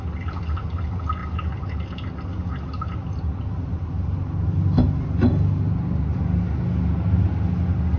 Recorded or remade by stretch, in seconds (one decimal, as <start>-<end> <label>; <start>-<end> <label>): 0.0-8.0 recorded